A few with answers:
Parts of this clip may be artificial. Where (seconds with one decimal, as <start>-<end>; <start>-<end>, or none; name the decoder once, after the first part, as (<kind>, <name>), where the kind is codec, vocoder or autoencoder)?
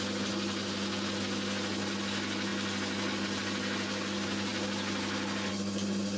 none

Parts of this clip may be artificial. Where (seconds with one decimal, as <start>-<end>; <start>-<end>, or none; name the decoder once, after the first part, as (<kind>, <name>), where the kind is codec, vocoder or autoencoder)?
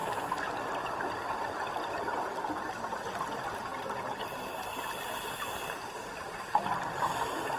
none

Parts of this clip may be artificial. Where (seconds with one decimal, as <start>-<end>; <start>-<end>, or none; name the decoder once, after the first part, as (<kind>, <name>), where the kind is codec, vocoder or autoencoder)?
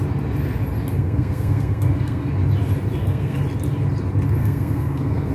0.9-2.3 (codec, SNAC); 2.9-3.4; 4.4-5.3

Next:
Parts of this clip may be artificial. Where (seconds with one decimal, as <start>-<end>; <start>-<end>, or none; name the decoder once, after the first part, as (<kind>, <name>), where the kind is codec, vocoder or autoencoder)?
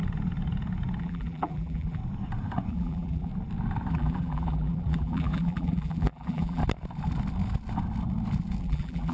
1.0-2.0 (vocoder, BigVGAN v2); 2.7-3.3; 3.9-6.6; 8.6-9.1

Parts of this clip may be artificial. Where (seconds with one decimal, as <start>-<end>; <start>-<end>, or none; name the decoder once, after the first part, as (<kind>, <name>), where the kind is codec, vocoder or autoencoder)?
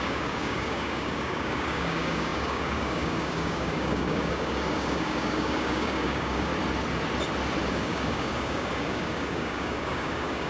0.0-6.5 (codec, DAC); 7.7-10.5